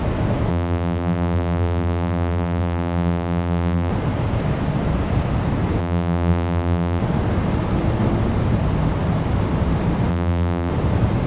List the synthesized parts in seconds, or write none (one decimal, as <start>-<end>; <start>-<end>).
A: 0.5-3.9; 5.8-7.0; 10.1-10.7